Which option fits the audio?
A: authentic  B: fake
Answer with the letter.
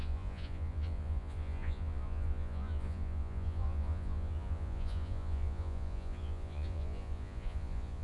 B